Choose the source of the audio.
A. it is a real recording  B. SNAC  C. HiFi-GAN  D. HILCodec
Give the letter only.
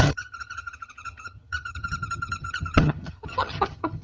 C